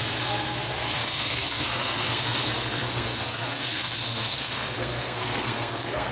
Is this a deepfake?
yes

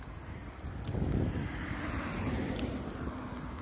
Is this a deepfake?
no